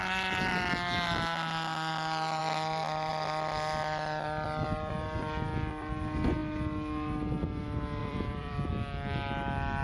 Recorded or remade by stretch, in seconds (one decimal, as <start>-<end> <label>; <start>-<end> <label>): 0.0-2.4 recorded; 2.4-3.1 remade; 3.1-8.0 recorded; 8.0-8.7 remade; 8.7-9.8 recorded